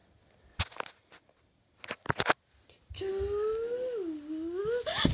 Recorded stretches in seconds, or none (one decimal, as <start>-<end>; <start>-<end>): 0.0-5.1